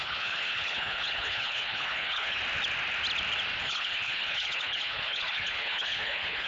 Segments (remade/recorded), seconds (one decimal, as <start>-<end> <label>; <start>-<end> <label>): 0.0-2.4 remade; 2.4-3.6 recorded; 3.6-6.5 remade